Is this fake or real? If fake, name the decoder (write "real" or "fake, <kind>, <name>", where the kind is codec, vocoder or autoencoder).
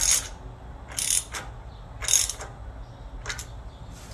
real